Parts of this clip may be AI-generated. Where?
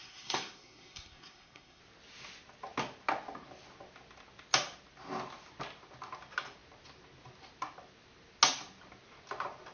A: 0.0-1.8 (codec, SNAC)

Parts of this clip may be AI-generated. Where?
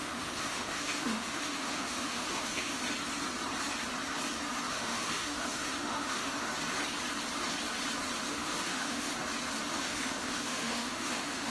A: 0.0-2.8 (autoencoder, DAC-VAE); 4.7-6.5; 8.3-9.1; 9.7-11.5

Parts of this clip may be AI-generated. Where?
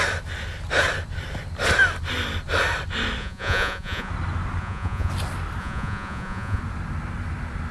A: 3.2-4.1 (vocoder, Vocos); 4.6-5.1; 5.6-6.6